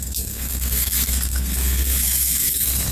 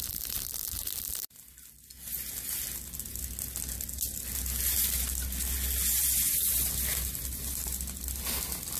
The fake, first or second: first